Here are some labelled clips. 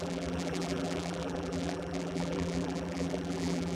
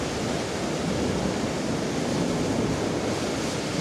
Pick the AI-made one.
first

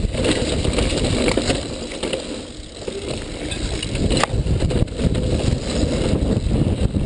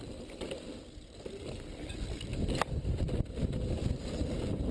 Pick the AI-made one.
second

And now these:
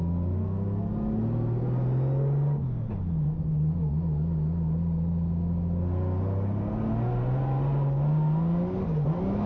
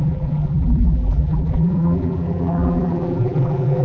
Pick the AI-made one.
second